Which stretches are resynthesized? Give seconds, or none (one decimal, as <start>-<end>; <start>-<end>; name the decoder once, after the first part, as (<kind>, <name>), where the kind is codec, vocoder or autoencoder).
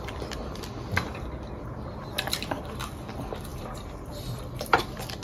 3.5-4.8 (vocoder, BigVGAN v2)